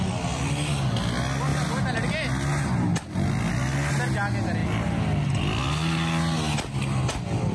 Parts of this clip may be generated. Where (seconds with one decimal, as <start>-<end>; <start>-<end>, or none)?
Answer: none